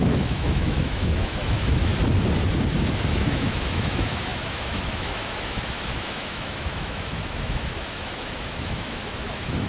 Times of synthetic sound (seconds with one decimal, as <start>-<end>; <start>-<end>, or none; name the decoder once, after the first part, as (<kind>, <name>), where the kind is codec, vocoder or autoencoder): 0.0-1.9 (autoencoder, DAC-VAE); 3.1-9.7